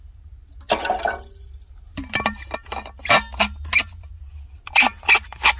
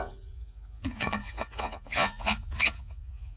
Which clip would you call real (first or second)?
first